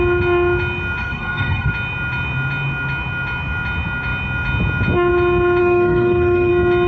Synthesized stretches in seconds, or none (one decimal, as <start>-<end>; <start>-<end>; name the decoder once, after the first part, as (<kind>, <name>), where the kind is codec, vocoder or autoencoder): 1.0-1.7 (codec, SNAC); 5.6-6.5